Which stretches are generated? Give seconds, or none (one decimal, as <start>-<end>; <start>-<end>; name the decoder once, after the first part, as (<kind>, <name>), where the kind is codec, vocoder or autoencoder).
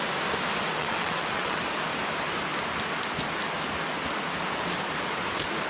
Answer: 0.8-1.6 (vocoder, WaveNeXt)